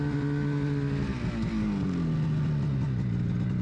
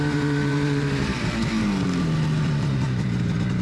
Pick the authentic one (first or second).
first